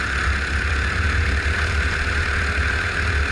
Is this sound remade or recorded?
recorded